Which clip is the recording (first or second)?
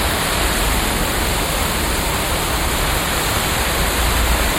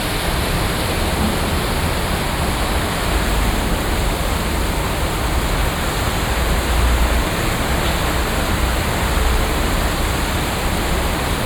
second